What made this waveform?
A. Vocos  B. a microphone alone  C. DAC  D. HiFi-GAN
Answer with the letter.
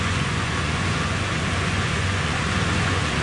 A